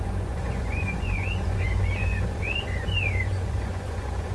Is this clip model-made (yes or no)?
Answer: yes